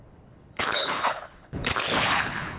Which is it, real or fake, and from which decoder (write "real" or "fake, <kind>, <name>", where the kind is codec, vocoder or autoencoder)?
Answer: fake, codec, HILCodec